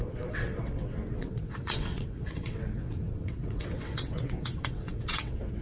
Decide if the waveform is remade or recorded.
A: remade